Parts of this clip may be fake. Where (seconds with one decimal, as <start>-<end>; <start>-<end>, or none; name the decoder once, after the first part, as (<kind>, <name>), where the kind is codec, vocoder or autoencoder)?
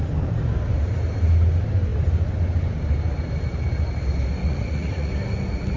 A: 4.4-5.1 (vocoder, Vocos)